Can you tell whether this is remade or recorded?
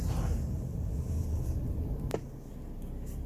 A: recorded